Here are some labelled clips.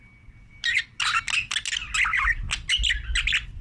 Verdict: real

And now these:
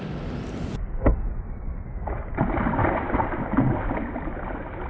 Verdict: real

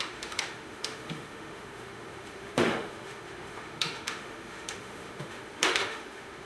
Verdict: fake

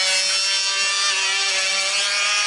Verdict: real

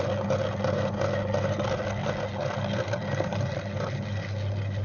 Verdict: real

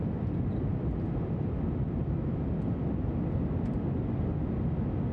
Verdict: real